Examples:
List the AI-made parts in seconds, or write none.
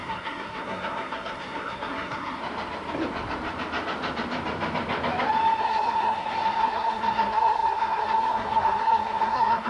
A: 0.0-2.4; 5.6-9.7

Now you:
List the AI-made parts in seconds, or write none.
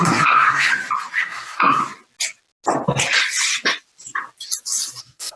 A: 0.0-0.7; 1.2-1.8; 5.0-5.4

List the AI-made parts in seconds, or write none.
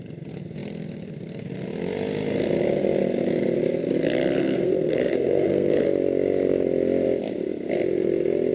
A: 4.4-5.9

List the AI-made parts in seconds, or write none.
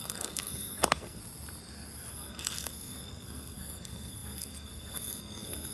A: 0.0-1.2; 2.1-5.7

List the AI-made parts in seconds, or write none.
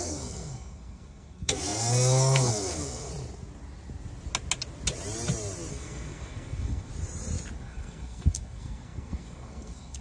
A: 0.0-3.1; 5.7-6.9; 7.6-10.0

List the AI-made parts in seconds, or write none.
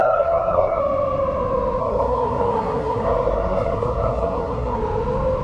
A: 0.0-0.8; 1.8-4.8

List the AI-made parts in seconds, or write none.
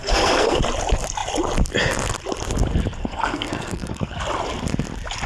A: 0.0-0.6; 3.0-4.2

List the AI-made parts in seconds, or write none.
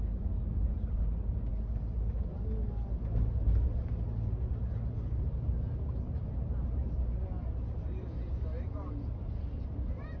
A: none